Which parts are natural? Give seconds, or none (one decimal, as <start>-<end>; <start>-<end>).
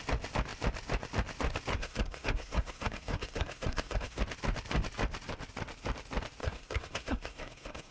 0.0-1.7; 4.2-6.4